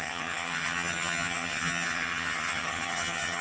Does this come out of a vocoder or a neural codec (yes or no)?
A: yes